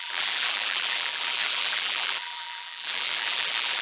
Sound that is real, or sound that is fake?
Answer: fake